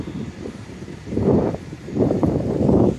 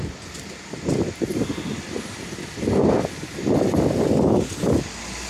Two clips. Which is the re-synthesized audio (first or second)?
first